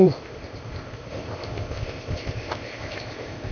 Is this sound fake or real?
fake